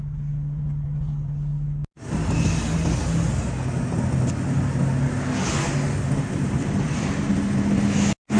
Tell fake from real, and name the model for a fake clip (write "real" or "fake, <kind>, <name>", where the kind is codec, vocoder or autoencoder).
real